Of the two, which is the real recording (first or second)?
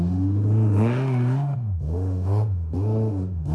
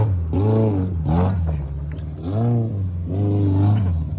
second